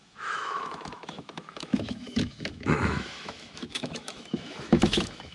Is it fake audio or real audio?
fake